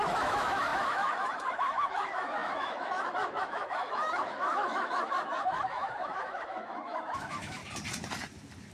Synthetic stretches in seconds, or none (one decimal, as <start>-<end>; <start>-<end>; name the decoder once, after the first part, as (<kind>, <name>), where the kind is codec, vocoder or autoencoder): 0.0-7.6 (autoencoder, DAC-VAE)